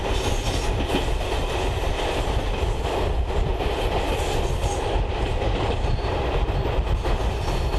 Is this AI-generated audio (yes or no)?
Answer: no